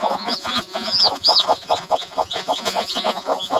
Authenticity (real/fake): fake